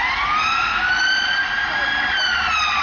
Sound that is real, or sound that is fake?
real